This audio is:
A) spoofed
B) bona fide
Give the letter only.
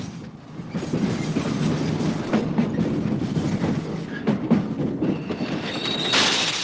B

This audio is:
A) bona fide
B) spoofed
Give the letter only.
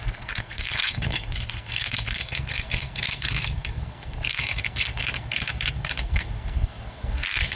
B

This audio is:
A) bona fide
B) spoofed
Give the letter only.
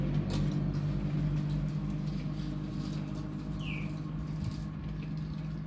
A